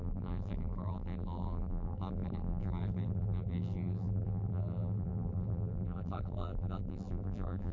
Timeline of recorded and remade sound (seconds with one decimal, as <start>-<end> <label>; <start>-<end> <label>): 0.0-7.7 remade